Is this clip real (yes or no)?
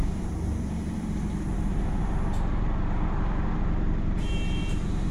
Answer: no